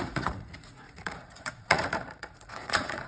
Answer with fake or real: fake